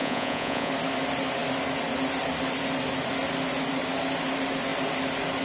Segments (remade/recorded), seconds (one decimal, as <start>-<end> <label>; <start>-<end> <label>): 0.0-0.7 remade; 0.7-5.4 recorded